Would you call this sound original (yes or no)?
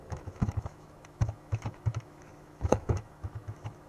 no